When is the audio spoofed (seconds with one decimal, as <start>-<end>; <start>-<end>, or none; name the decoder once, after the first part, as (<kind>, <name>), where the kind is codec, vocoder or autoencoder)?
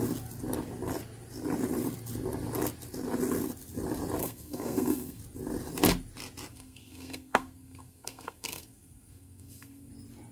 4.2-5.2 (codec, SNAC); 6.5-9.9